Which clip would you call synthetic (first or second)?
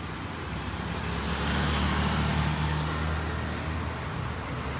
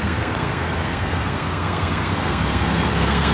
second